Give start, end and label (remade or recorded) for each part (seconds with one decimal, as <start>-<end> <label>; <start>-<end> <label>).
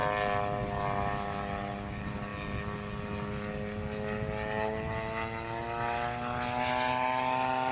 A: 0.0-7.7 recorded